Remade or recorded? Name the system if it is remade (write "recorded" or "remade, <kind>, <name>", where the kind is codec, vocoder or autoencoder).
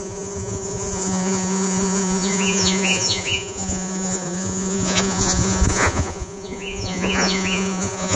remade, vocoder, Vocos